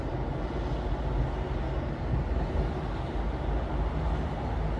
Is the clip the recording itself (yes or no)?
yes